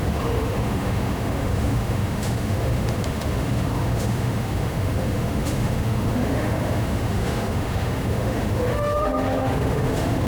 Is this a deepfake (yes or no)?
yes